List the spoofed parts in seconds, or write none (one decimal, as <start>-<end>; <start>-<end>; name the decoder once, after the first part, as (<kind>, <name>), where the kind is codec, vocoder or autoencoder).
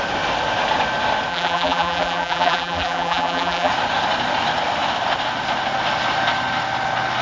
1.3-3.7 (vocoder, BigVGAN v2)